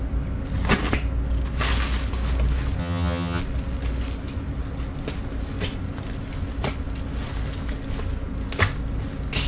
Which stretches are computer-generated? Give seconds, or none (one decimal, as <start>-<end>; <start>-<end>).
2.8-3.4